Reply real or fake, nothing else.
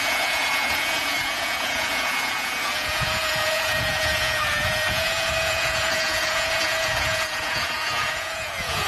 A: fake